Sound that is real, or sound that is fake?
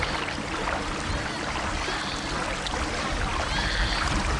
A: real